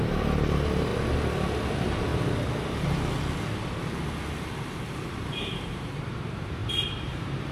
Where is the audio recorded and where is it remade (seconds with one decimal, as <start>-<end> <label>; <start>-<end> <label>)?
0.0-0.9 remade; 0.9-1.7 recorded; 1.7-2.1 remade; 2.1-4.9 recorded; 4.9-7.5 remade